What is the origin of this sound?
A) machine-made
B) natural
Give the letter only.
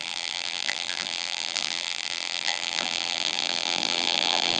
A